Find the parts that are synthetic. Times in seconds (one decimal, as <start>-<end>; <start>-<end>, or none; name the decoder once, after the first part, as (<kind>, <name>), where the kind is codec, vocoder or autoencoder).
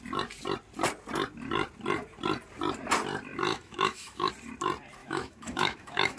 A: 3.5-4.3 (autoencoder, DAC-VAE); 5.0-6.2